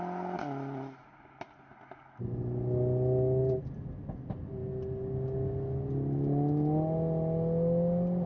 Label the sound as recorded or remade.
recorded